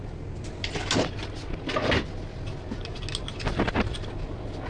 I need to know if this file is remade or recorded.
recorded